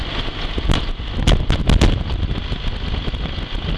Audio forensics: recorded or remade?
recorded